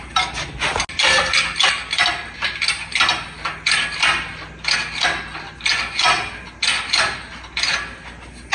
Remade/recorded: recorded